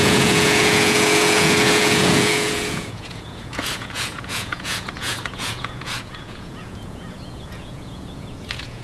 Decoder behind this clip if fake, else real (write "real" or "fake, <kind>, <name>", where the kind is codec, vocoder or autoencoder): fake, vocoder, Vocos